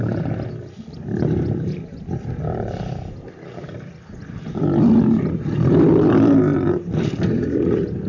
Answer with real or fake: real